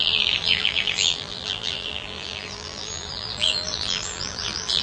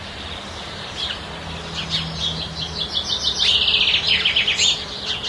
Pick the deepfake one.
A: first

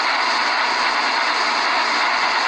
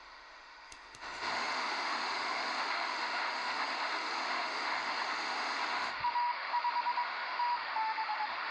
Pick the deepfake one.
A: second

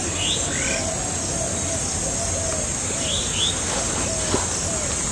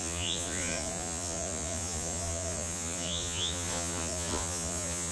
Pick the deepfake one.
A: second